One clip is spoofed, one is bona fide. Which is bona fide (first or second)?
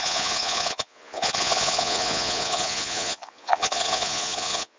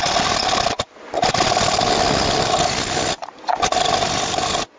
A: second